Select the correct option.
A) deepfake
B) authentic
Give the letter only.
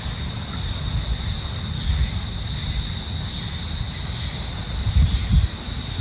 B